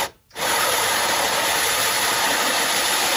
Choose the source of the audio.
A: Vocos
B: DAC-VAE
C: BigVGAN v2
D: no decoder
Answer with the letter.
C